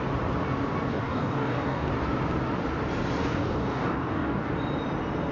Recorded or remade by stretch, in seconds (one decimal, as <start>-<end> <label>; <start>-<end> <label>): 0.0-0.9 recorded; 0.9-1.9 remade; 1.9-3.2 recorded; 3.2-4.5 remade; 4.5-5.3 recorded